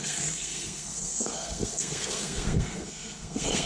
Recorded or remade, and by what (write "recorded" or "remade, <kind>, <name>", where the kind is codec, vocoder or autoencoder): remade, codec, SNAC